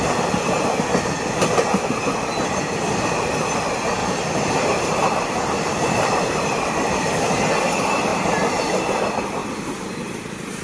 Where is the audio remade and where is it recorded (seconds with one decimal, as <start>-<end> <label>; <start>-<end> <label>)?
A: 0.0-4.0 recorded; 4.0-6.5 remade; 6.5-8.1 recorded; 8.1-9.0 remade; 9.0-10.6 recorded